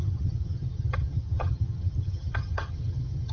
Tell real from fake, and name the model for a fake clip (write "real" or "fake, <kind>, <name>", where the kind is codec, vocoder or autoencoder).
fake, vocoder, HiFi-GAN